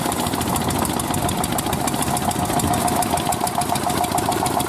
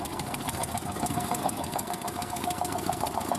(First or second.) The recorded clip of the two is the first